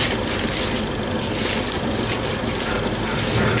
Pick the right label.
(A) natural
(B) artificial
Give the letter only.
A